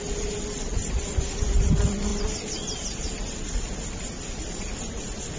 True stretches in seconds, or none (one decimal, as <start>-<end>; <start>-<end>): 0.0-5.4